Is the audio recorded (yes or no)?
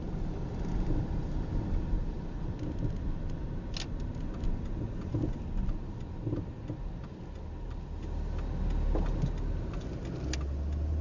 yes